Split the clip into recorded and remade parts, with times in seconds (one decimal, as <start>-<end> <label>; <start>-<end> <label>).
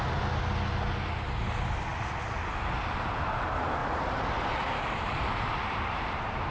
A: 0.0-3.8 recorded; 3.8-6.5 remade